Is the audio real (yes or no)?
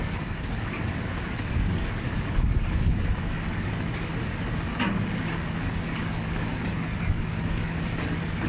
no